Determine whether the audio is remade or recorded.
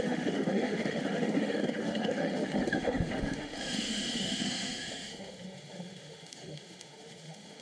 remade